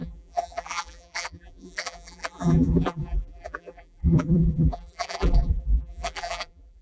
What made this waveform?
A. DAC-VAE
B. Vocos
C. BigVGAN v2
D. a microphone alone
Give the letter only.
C